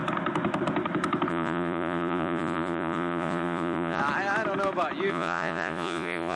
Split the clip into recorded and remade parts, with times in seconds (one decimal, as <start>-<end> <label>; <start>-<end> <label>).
0.0-1.3 recorded; 1.3-4.0 remade; 4.0-5.1 recorded; 5.1-6.4 remade